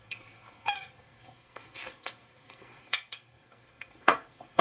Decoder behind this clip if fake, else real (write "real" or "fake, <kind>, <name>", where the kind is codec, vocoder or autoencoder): fake, codec, SNAC